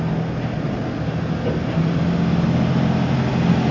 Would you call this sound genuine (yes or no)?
yes